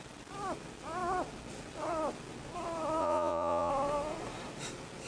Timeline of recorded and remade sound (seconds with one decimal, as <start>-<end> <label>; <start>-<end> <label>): 0.0-3.0 recorded; 3.0-3.7 remade; 3.7-5.1 recorded